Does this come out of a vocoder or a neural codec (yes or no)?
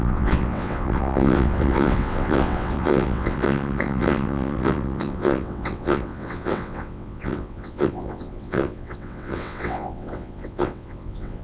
yes